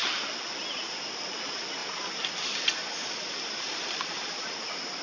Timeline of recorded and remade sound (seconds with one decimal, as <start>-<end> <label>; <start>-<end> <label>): 0.0-5.0 recorded